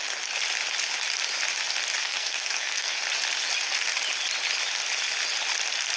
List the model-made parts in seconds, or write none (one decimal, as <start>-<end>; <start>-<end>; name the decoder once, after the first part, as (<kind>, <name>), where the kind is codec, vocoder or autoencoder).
2.0-3.0 (codec, SNAC)